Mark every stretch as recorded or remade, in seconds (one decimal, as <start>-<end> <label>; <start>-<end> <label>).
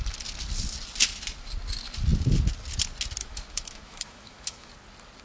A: 0.0-3.2 recorded; 3.2-4.7 remade; 4.7-5.2 recorded